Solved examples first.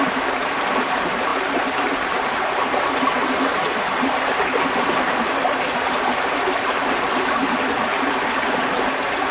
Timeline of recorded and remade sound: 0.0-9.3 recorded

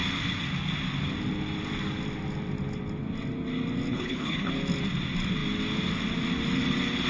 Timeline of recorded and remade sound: 0.0-3.9 recorded; 3.9-4.5 remade; 4.5-7.1 recorded

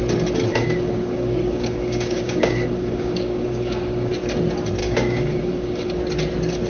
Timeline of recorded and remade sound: 0.0-0.5 recorded; 0.5-4.1 remade; 4.1-4.8 recorded; 4.8-6.0 remade; 6.0-6.7 recorded